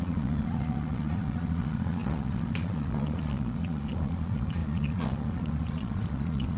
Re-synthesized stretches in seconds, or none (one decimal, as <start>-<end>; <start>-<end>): 0.0-6.6